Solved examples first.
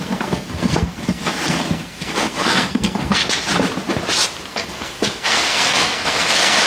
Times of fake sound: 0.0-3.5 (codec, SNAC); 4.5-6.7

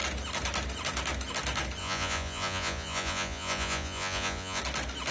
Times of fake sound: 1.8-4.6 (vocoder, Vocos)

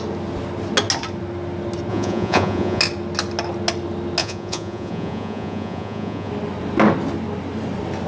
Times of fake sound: 1.9-2.8 (vocoder, Vocos); 4.2-6.3

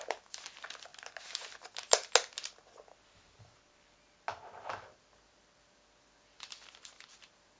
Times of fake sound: 0.0-0.9 (vocoder, BigVGAN v2); 4.4-7.6

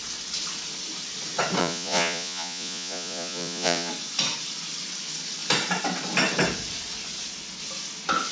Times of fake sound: 1.6-3.9 (vocoder, Vocos)

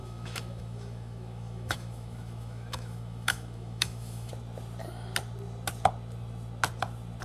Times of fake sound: 0.0-4.3 (autoencoder, DAC-VAE)